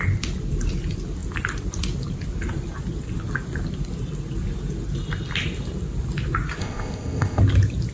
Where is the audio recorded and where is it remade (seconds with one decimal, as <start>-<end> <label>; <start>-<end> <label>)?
0.0-6.6 recorded; 6.6-7.4 remade; 7.4-7.9 recorded